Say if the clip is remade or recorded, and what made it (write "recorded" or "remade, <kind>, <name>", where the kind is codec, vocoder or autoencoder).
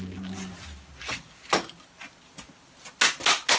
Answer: recorded